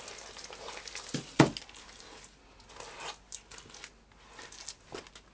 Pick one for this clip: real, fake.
real